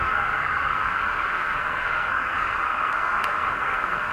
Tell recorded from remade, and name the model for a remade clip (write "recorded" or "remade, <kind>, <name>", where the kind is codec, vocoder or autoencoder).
remade, codec, SNAC